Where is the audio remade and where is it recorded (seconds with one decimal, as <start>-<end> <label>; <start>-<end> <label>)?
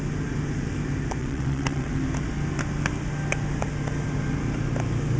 0.0-1.2 recorded; 1.2-1.9 remade; 1.9-5.2 recorded